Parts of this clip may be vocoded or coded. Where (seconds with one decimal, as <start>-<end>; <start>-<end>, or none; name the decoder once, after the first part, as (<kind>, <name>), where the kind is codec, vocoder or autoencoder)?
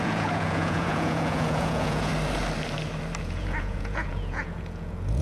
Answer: 0.0-2.1 (vocoder, Vocos); 3.2-5.2